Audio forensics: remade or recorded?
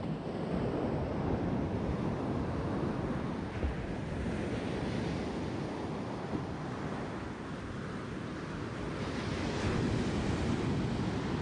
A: recorded